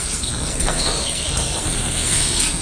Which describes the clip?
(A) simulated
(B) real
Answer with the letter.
A